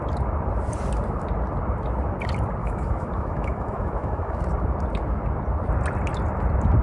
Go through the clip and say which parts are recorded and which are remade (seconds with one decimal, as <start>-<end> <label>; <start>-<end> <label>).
0.0-2.6 recorded; 2.6-4.4 remade; 4.4-6.8 recorded